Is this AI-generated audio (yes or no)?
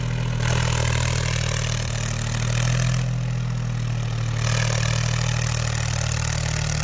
no